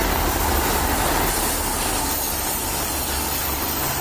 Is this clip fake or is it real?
real